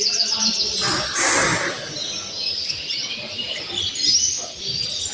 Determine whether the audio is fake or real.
real